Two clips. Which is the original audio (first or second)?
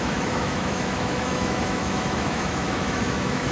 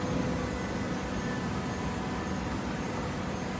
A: second